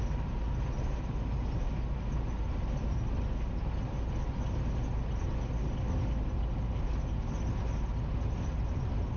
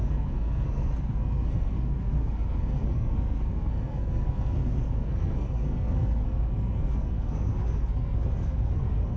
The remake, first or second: second